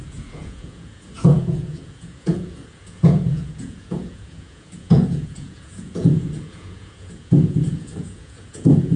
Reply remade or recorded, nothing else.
remade